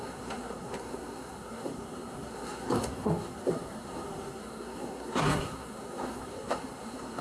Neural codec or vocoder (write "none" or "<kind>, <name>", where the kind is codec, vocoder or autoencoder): codec, SNAC